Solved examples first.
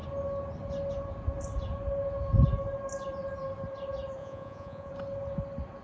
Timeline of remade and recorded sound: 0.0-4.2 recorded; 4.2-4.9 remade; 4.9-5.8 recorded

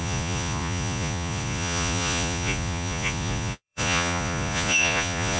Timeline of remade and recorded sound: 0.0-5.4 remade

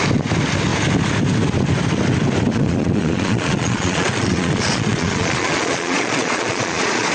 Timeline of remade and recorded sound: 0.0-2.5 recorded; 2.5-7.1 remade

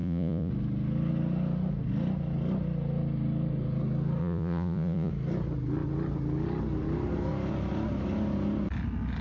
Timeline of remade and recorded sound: 0.0-0.5 remade; 0.5-4.2 recorded; 4.2-5.1 remade; 5.1-9.2 recorded

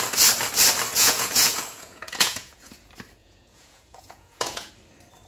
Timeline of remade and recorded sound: 0.0-0.9 recorded; 0.9-2.7 remade; 2.7-3.2 recorded; 3.2-4.7 remade; 4.7-5.3 recorded

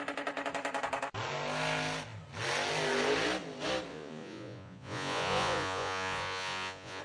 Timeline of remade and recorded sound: 0.0-3.9 recorded; 3.9-7.0 remade

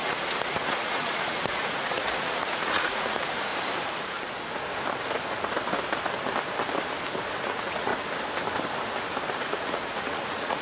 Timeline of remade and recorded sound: 0.0-3.5 remade; 3.5-7.4 recorded; 7.4-7.9 remade; 7.9-9.3 recorded; 9.3-10.6 remade

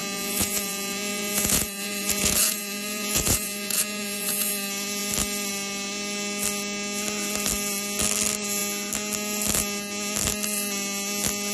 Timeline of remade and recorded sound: 0.0-4.5 remade; 4.5-11.5 recorded